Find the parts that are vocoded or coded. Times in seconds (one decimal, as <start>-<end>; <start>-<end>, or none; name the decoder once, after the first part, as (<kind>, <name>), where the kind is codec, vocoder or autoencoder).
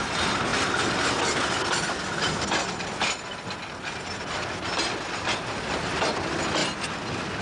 none